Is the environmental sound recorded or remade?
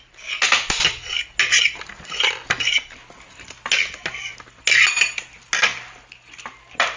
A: recorded